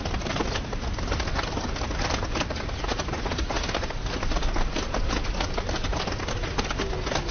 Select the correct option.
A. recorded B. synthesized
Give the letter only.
A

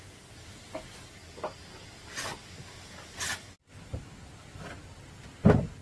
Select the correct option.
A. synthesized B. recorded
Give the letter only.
B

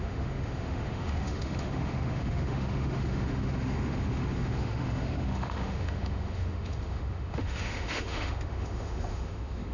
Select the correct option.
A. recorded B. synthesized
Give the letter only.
B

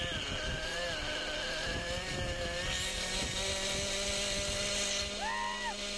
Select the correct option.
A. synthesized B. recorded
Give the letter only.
B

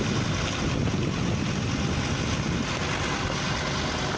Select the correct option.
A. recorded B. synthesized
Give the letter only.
A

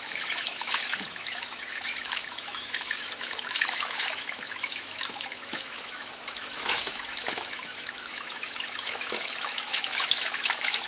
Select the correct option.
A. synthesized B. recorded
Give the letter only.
A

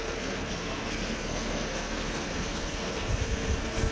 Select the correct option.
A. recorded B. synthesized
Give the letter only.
B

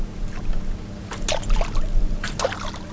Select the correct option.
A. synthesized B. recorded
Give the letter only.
B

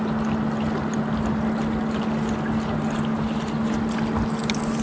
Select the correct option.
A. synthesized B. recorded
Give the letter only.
B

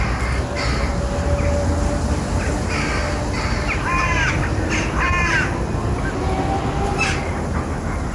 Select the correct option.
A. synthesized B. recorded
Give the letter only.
B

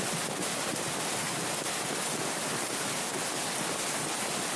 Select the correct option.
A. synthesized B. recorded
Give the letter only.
B